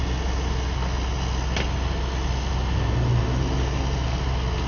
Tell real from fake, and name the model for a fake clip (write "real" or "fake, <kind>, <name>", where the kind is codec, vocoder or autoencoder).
real